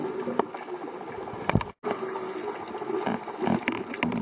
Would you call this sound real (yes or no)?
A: yes